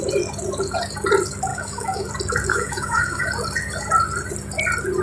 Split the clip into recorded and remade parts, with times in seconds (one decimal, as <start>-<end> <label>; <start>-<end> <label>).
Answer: 0.0-1.5 recorded; 1.5-2.1 remade; 2.1-2.5 recorded; 2.5-3.3 remade; 3.3-5.0 recorded